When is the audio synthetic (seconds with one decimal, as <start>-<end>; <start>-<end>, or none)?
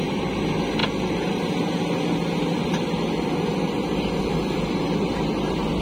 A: none